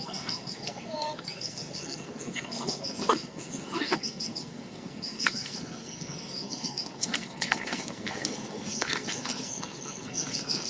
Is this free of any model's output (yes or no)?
no